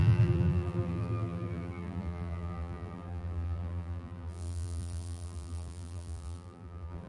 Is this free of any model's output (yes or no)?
no